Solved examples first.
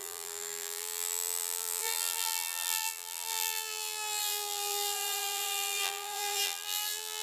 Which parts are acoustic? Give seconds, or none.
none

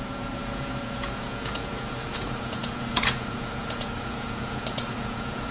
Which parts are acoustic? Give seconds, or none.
none